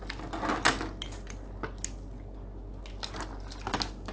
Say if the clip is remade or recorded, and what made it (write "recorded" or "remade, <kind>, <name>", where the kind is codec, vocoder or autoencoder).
recorded